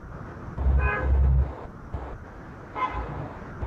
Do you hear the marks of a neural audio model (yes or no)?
no